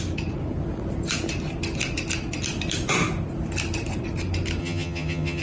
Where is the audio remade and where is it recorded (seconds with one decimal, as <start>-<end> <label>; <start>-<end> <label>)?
0.0-4.6 recorded; 4.6-5.4 remade